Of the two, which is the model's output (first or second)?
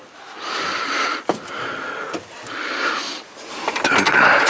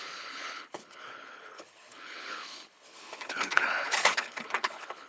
second